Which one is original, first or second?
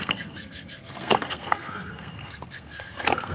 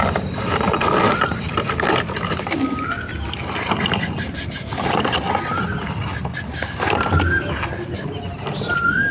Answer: second